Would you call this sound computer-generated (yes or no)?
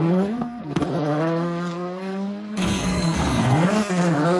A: yes